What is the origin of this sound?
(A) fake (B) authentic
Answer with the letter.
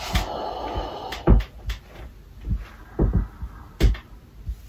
B